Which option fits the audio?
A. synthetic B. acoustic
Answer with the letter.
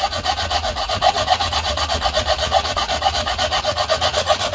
A